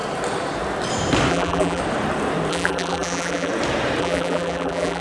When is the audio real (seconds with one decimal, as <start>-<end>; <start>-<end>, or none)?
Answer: 0.0-1.3; 1.8-2.5; 3.5-4.0